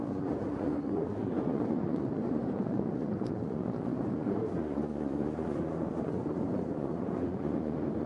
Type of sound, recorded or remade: remade